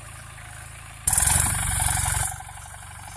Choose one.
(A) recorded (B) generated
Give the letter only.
B